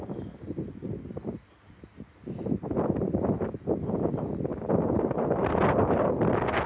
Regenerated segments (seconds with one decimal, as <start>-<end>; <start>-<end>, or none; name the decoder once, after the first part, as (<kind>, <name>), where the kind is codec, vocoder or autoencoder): none